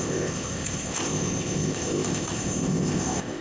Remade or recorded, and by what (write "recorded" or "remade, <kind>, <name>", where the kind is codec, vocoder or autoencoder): remade, codec, ZipCodec